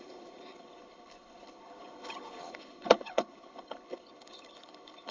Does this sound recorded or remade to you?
remade